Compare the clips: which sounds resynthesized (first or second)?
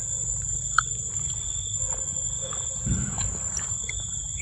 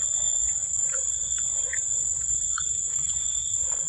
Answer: second